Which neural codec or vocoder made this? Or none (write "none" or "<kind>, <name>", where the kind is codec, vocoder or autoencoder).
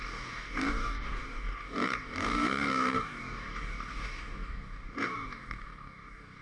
codec, DAC